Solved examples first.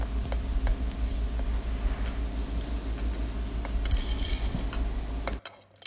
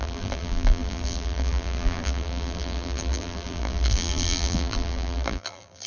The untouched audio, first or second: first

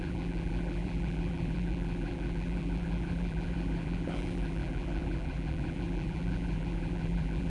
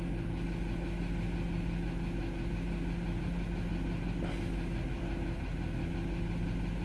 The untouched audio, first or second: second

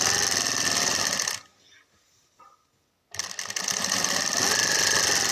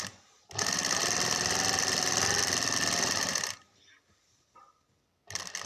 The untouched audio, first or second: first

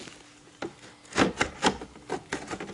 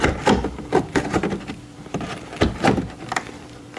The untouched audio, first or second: first